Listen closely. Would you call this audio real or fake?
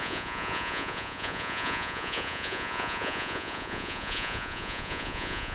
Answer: fake